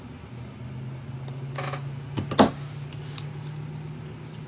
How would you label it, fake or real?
real